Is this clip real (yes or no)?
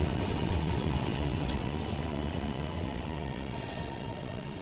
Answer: no